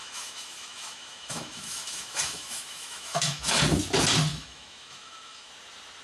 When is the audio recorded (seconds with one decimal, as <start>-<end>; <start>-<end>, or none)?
3.6-4.3; 5.5-6.0